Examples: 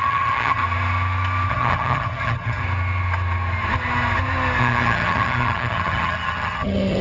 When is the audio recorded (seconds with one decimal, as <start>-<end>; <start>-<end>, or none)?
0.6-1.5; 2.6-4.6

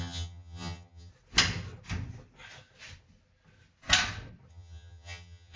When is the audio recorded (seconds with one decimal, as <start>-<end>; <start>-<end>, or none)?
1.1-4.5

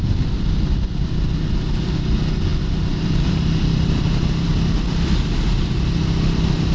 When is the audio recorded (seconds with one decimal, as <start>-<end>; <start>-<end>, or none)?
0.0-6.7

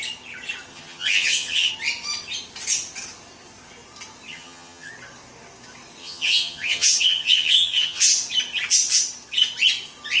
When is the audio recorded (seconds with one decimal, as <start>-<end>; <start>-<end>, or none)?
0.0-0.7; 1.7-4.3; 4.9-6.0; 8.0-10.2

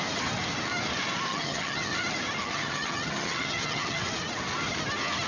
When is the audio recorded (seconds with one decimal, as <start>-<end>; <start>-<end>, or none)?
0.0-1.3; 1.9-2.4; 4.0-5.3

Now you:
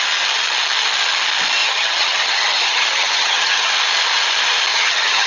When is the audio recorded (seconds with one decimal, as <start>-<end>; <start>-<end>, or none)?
0.0-1.6; 3.7-4.7

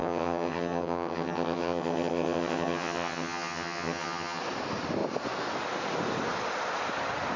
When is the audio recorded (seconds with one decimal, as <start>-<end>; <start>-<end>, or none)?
4.4-7.4